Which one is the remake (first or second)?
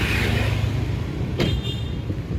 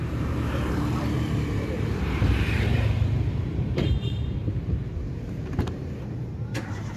second